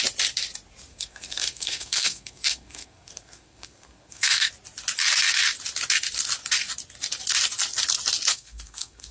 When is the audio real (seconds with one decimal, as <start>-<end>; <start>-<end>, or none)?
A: 0.0-0.9; 4.5-8.3